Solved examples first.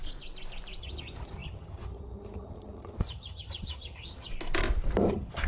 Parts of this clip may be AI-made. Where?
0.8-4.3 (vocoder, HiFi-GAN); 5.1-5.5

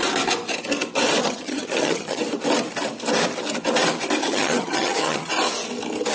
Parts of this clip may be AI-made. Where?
1.2-2.2 (vocoder, HiFi-GAN); 4.2-5.3

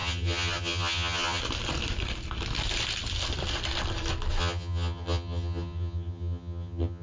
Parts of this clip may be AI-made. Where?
0.0-1.4 (vocoder, HiFi-GAN); 4.4-7.0